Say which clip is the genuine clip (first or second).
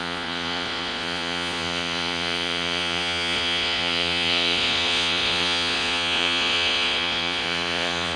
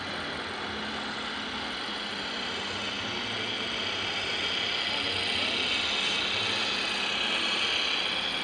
second